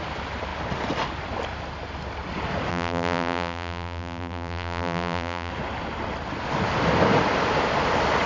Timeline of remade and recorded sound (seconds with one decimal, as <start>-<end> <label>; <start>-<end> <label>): 0.0-2.7 recorded; 2.7-5.5 remade; 5.5-8.3 recorded